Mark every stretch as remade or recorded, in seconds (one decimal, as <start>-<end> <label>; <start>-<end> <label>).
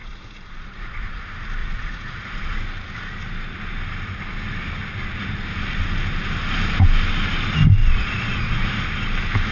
0.0-1.2 remade; 1.2-1.6 recorded; 1.6-2.6 remade; 2.6-7.8 recorded; 7.8-8.7 remade; 8.7-9.5 recorded